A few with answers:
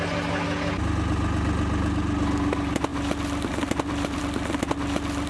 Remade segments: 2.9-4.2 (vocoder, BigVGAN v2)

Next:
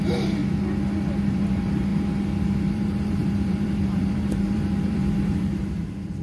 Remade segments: 0.0-0.4 (vocoder, BigVGAN v2); 1.2-1.9; 2.7-6.2

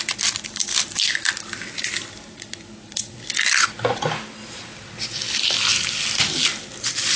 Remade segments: 0.7-1.3 (vocoder, BigVGAN v2)

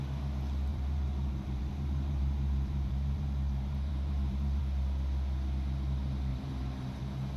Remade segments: 0.7-4.6 (vocoder, BigVGAN v2); 6.3-7.0

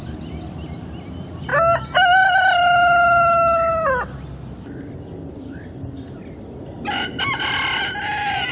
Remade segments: 0.0-1.5 (vocoder, BigVGAN v2); 4.8-8.5

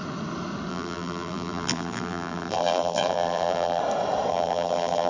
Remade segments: 0.7-3.8 (vocoder, BigVGAN v2); 4.3-5.1